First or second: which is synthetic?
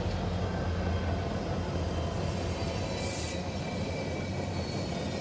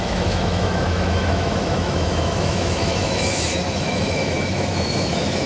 second